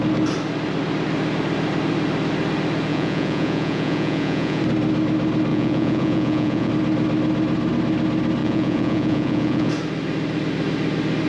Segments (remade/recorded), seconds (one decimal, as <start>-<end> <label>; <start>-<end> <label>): 0.0-2.9 recorded; 2.9-4.6 remade; 4.6-5.5 recorded; 5.5-6.7 remade; 6.7-8.4 recorded; 8.4-9.7 remade; 9.7-11.3 recorded